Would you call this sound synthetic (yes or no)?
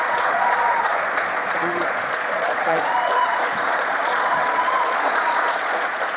yes